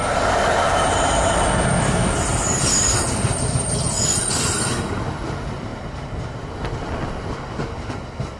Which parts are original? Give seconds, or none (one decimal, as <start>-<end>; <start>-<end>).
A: 0.0-8.4